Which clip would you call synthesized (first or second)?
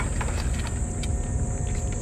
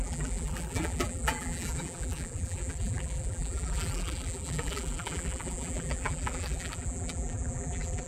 second